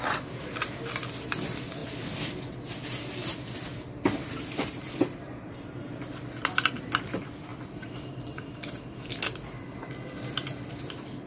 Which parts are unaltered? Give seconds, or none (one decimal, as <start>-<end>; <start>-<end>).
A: 7.5-8.1